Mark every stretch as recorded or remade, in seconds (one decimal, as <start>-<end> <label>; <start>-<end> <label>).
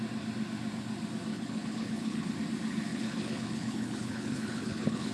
0.0-1.3 recorded; 1.3-2.3 remade; 2.3-2.9 recorded; 2.9-5.1 remade